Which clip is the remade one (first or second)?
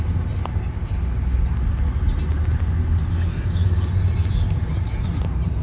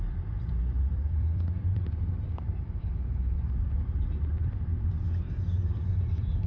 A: second